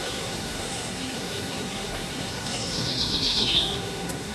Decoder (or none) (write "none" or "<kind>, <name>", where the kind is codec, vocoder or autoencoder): codec, SNAC